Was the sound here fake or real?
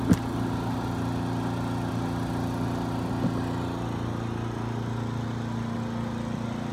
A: real